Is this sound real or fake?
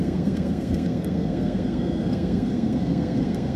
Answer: fake